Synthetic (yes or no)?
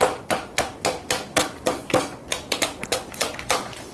yes